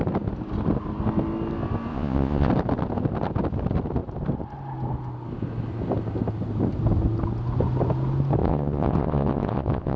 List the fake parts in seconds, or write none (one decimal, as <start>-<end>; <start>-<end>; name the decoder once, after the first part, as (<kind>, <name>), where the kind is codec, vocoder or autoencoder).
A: 1.9-2.5 (vocoder, Vocos); 8.4-10.0